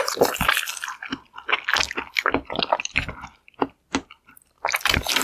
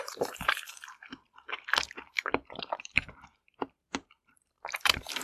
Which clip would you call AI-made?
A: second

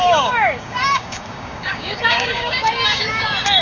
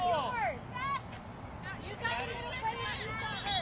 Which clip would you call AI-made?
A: first